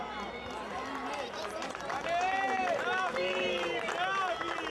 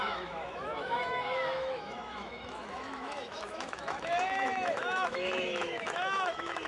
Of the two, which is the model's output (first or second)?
second